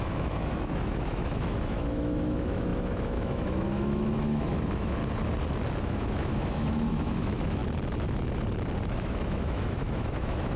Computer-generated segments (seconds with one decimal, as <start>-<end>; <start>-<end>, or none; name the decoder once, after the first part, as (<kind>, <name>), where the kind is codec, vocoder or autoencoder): 0.0-5.0 (autoencoder, DAC-VAE); 5.8-7.6; 8.8-10.6